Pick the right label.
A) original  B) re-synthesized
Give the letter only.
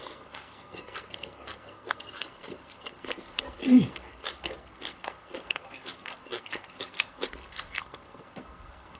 B